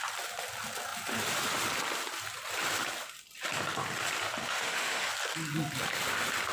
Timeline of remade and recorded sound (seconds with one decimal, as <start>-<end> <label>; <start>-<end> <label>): 0.0-4.4 recorded; 4.4-5.1 remade; 5.1-6.5 recorded